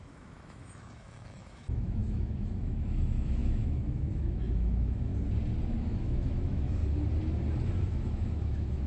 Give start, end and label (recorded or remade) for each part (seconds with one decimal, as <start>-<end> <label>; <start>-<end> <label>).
0.0-5.1 remade; 5.1-5.8 recorded; 5.8-6.8 remade; 6.8-7.9 recorded; 7.9-8.9 remade